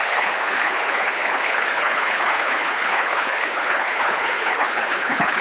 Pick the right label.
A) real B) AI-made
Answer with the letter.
B